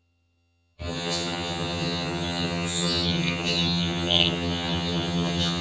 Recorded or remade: remade